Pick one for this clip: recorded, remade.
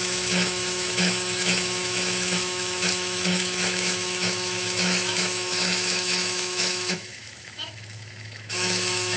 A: remade